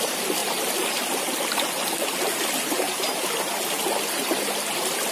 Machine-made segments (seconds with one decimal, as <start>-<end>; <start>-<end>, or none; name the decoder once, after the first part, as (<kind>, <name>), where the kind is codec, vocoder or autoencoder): 0.4-3.5 (vocoder, BigVGAN v2)